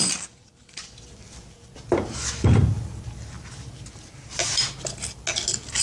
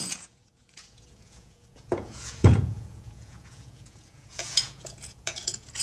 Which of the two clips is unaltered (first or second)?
first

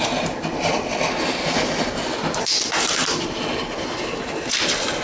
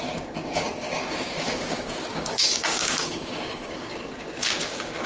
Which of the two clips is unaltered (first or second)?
first